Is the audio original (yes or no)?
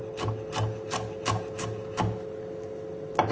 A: yes